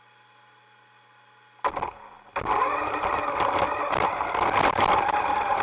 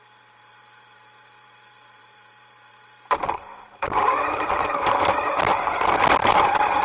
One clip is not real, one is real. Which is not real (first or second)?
second